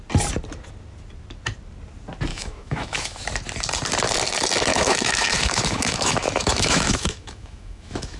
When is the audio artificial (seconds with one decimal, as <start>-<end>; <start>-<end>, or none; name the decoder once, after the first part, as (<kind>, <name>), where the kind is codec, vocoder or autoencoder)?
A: 2.3-3.2 (autoencoder, DAC-VAE); 4.7-8.2